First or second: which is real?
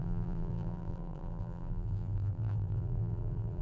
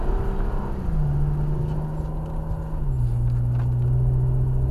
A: second